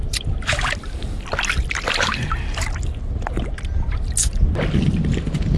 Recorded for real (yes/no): yes